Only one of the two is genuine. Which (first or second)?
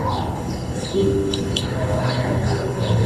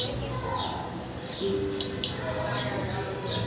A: second